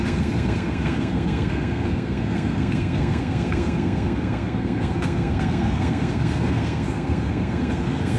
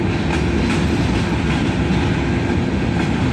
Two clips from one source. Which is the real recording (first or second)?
second